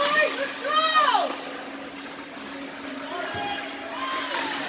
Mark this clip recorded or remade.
recorded